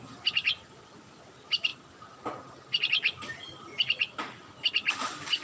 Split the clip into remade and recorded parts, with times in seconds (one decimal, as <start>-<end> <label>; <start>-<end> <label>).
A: 0.0-5.4 recorded